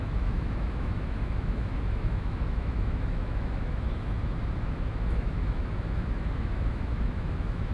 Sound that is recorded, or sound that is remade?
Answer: remade